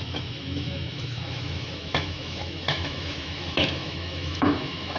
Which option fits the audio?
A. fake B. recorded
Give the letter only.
A